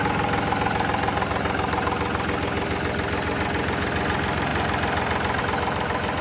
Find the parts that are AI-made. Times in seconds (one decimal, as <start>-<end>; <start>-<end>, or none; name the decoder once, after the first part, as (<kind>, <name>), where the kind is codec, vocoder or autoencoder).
none